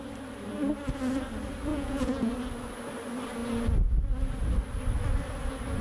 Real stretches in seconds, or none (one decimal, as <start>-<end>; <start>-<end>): 0.0-1.7; 2.3-5.8